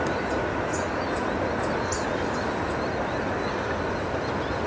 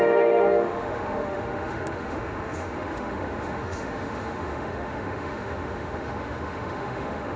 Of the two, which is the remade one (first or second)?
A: second